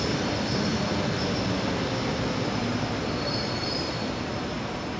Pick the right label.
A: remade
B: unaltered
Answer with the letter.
B